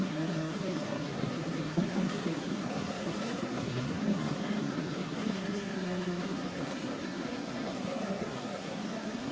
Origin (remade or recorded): remade